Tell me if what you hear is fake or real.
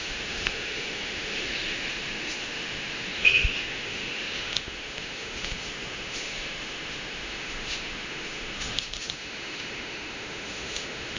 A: fake